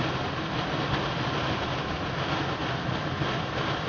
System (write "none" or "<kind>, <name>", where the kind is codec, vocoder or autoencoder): none